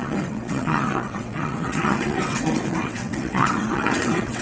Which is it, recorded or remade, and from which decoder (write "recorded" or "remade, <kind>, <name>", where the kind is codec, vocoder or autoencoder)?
remade, vocoder, WaveNeXt